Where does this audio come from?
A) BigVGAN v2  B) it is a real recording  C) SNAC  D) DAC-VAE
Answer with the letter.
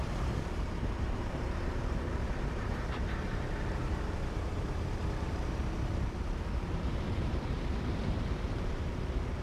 A